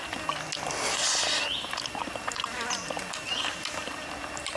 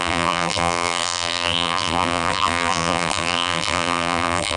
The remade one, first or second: second